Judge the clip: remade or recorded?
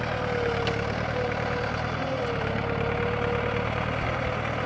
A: recorded